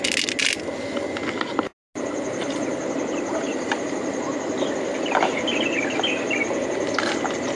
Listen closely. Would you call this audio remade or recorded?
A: recorded